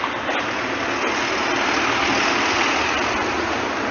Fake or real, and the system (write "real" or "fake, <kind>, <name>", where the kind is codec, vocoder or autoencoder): real